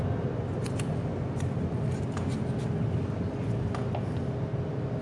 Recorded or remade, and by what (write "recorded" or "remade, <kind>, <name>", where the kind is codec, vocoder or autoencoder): recorded